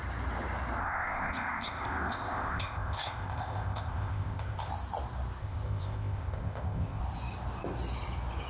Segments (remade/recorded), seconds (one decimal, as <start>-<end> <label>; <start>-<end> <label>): 0.0-0.8 recorded; 0.8-4.7 remade; 4.7-5.4 recorded; 5.4-7.0 remade; 7.0-8.5 recorded